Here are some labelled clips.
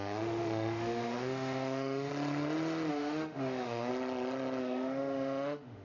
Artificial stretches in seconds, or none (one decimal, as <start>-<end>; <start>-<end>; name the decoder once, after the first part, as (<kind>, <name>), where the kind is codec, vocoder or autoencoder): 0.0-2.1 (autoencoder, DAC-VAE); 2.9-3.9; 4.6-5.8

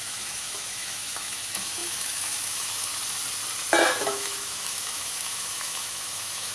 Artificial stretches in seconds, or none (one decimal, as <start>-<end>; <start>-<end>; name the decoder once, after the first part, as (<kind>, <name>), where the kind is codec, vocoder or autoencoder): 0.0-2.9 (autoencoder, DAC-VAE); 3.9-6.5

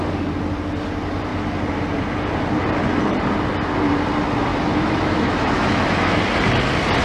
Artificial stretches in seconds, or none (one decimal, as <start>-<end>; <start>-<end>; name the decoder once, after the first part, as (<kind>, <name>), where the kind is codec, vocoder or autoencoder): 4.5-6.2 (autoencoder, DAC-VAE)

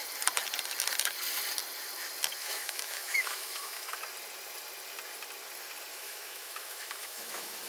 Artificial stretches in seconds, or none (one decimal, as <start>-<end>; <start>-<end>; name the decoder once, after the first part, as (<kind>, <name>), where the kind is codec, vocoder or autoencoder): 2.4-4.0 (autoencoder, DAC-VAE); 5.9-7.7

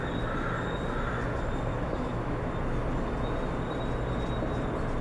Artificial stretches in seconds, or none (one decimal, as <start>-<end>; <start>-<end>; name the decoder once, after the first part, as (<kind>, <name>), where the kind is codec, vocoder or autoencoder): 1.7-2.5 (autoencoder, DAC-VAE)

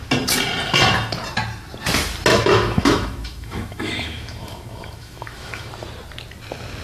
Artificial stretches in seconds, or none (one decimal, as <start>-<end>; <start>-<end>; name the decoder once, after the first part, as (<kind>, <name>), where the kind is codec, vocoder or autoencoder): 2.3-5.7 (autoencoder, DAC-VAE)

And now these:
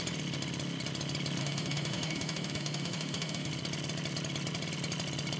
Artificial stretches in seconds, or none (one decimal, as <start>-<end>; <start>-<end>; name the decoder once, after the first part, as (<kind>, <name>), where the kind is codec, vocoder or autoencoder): 1.4-3.5 (autoencoder, DAC-VAE)